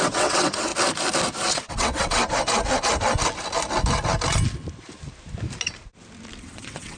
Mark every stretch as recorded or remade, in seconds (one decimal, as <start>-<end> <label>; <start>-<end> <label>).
0.0-0.7 remade; 0.7-1.5 recorded; 1.5-2.2 remade; 2.2-6.4 recorded; 6.4-7.0 remade